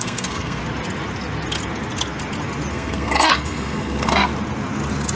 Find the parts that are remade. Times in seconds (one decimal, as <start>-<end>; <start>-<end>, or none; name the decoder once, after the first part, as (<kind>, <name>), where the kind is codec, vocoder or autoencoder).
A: 0.0-0.6 (codec, SNAC); 2.7-4.3